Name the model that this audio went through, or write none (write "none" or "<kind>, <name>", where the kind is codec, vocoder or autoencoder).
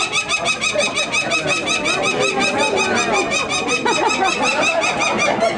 none